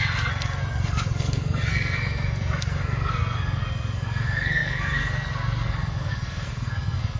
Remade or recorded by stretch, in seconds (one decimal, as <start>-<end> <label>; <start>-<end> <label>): 0.0-7.2 remade